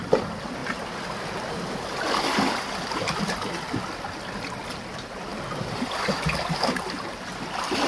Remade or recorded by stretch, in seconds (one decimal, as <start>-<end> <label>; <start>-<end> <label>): 0.0-7.9 recorded